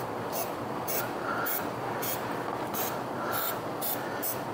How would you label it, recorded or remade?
recorded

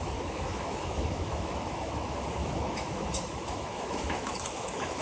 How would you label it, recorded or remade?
remade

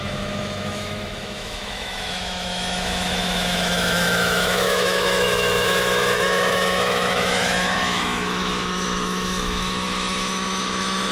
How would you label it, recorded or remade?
remade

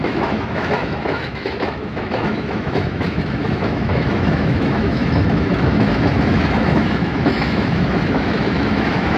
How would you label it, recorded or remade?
remade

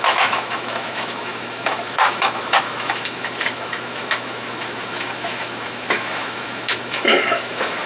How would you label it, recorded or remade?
remade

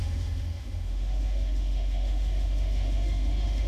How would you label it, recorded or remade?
remade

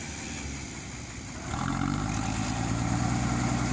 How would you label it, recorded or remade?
recorded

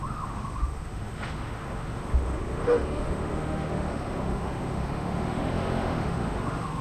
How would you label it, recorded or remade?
remade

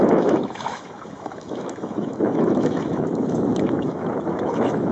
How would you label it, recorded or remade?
remade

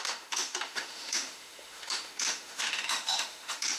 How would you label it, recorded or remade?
remade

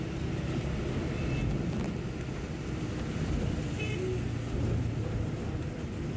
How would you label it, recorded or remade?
recorded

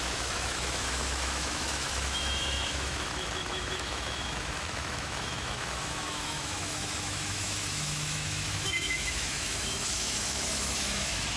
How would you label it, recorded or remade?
remade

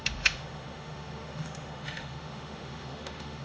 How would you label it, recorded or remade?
remade